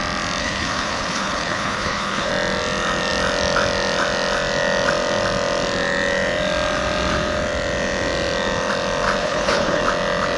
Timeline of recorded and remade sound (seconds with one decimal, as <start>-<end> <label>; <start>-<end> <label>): 0.0-0.4 recorded; 0.4-2.3 remade; 2.3-9.2 recorded; 9.2-9.8 remade; 9.8-10.4 recorded